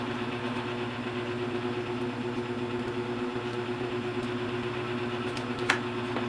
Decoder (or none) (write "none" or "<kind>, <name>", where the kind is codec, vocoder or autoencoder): none